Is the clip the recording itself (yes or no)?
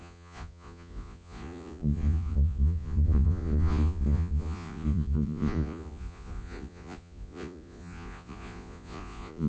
no